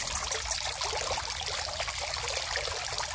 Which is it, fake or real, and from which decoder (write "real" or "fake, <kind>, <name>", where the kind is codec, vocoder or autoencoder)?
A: real